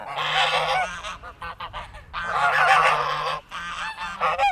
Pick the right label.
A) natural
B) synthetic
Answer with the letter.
A